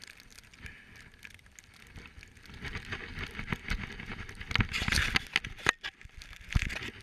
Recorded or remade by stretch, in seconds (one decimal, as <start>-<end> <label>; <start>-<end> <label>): 0.0-7.0 recorded